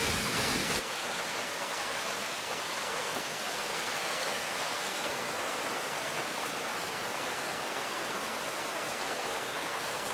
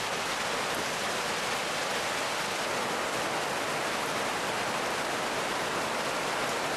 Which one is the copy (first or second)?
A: first